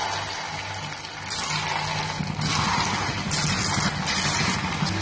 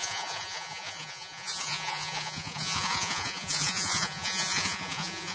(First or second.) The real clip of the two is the first